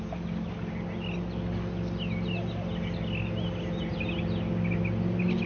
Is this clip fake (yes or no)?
no